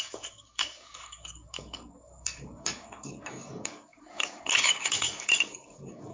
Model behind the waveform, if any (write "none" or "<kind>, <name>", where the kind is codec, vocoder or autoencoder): codec, DAC